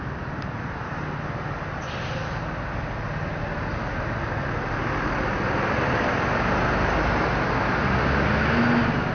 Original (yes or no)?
yes